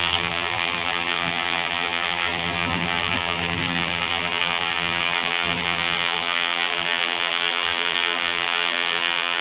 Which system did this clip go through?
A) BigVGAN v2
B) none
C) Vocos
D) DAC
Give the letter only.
A